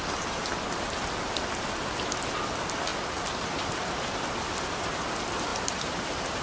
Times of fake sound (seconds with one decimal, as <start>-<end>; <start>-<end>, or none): none